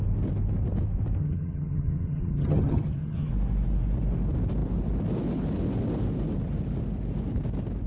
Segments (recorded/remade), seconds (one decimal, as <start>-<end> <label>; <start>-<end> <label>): 0.0-1.2 recorded; 1.2-3.3 remade; 3.3-7.9 recorded